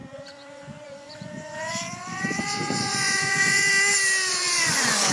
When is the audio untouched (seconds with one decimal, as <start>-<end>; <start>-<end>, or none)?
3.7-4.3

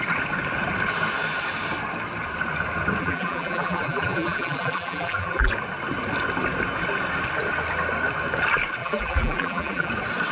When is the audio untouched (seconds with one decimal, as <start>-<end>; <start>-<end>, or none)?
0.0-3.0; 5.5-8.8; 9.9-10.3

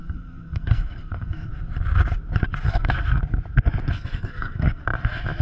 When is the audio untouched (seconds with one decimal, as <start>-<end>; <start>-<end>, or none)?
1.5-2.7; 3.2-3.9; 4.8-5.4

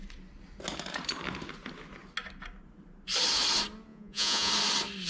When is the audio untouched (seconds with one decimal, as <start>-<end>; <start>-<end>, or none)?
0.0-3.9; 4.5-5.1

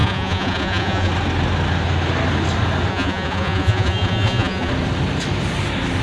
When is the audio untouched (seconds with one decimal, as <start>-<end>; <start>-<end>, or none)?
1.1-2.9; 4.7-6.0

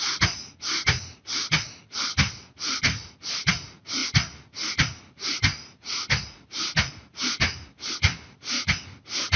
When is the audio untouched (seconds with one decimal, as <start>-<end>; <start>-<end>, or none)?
0.0-9.4